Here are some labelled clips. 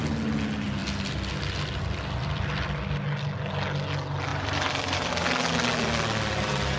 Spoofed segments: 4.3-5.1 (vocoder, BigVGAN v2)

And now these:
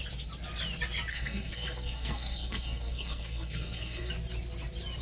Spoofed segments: 1.1-4.1 (codec, SNAC)

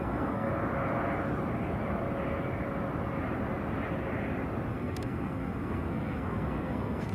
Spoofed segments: 0.0-0.5 (codec, SNAC); 4.7-7.1